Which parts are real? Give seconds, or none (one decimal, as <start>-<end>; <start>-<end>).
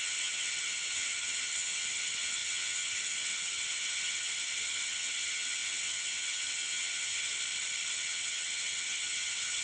7.3-7.9